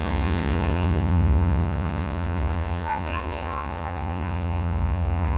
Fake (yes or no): yes